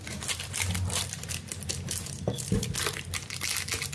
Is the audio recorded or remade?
recorded